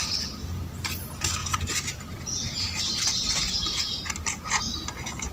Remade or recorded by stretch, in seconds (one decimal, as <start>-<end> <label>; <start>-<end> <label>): 0.0-1.4 recorded; 1.4-4.6 remade; 4.6-5.3 recorded